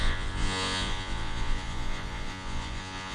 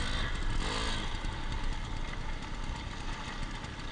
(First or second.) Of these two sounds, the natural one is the second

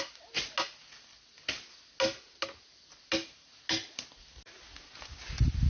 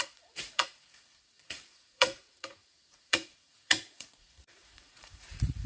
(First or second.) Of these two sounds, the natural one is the first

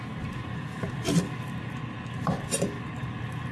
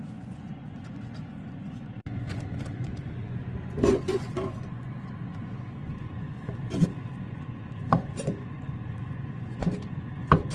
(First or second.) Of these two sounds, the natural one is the first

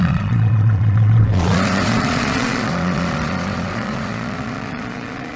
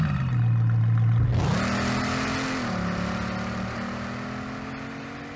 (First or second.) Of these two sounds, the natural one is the second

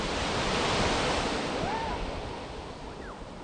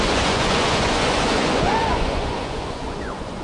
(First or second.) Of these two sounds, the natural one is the first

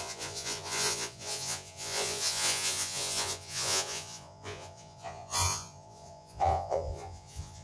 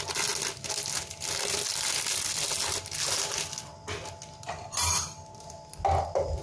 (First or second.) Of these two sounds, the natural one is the second